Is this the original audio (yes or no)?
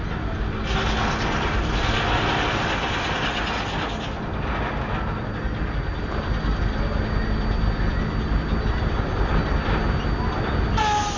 yes